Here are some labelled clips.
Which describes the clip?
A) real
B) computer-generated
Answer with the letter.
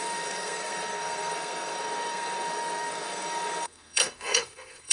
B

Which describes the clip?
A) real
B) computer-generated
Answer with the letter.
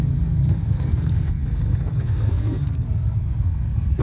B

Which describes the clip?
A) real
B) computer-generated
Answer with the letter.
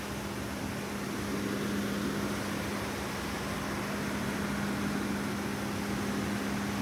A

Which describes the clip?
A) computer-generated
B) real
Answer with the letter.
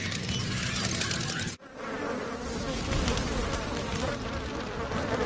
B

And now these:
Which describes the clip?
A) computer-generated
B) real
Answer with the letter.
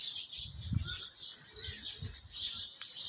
B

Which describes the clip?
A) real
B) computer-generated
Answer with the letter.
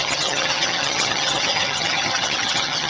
B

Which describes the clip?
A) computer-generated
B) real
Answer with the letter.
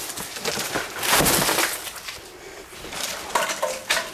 A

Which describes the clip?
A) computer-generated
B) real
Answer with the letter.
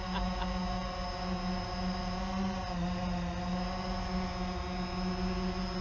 B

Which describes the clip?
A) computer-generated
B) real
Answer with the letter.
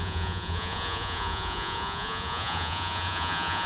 A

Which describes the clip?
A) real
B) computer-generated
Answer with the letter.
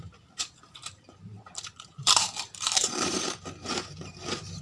B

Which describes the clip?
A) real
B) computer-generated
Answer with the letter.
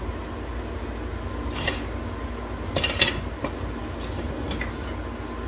A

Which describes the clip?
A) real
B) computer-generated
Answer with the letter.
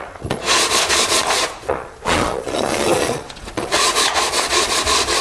B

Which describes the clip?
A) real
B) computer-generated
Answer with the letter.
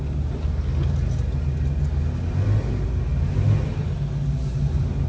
A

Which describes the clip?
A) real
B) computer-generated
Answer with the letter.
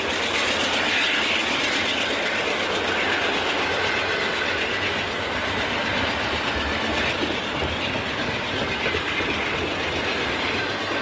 A